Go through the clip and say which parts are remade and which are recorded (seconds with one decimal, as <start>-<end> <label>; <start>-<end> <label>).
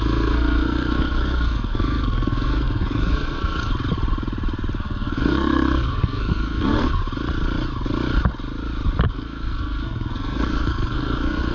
0.0-3.7 remade; 3.7-4.8 recorded; 4.8-7.0 remade; 7.0-9.1 recorded; 9.1-11.5 remade